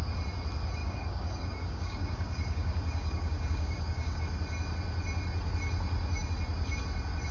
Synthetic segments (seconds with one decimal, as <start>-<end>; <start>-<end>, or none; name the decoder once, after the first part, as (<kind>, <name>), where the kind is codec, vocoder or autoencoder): 0.8-4.2 (codec, DAC)